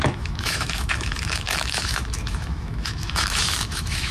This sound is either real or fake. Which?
fake